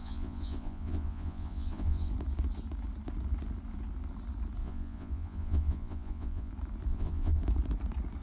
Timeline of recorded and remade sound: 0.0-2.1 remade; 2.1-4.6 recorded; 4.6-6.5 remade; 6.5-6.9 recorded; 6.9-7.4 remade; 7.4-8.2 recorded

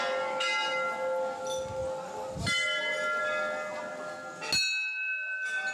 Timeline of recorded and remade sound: 0.0-5.7 recorded

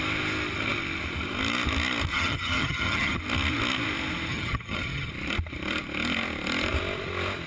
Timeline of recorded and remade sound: 0.0-2.1 recorded; 2.1-3.2 remade; 3.2-4.3 recorded; 4.3-5.1 remade; 5.1-7.5 recorded

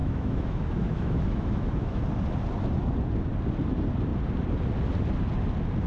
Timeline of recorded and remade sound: 0.0-2.0 remade; 2.0-5.9 recorded

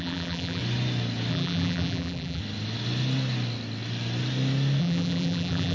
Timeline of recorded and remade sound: 0.0-0.6 remade; 0.6-1.3 recorded; 1.3-2.4 remade; 2.4-4.8 recorded; 4.8-5.7 remade

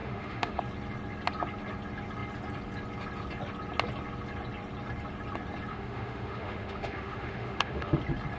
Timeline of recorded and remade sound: 0.0-0.6 remade; 0.6-5.7 recorded; 5.7-8.0 remade; 8.0-8.4 recorded